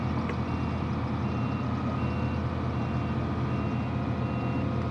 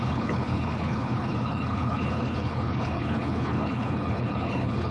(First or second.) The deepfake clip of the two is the second